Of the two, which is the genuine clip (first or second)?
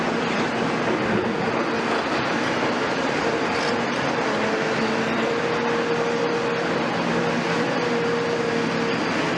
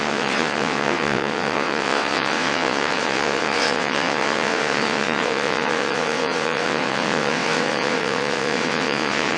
first